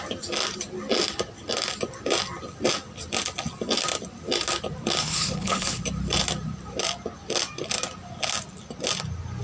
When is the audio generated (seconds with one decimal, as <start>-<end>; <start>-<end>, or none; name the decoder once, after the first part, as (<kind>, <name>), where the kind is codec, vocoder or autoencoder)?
5.0-5.8 (codec, HILCodec)